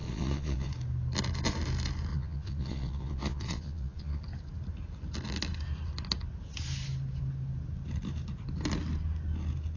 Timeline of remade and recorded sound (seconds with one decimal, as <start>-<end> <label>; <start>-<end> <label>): 0.0-0.7 remade; 0.7-2.1 recorded; 2.1-4.2 remade; 4.2-9.8 recorded